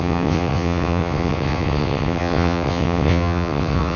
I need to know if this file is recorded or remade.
remade